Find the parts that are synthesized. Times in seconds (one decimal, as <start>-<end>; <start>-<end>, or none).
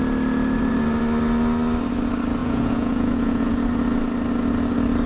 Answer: 2.4-3.5